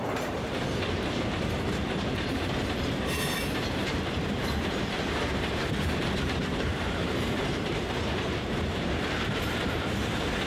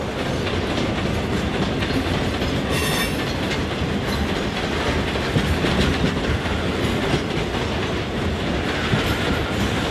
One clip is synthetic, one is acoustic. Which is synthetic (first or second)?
first